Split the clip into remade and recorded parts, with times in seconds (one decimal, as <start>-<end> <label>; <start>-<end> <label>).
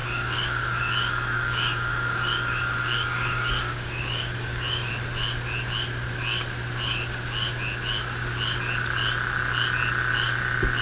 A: 0.0-4.9 remade; 4.9-10.8 recorded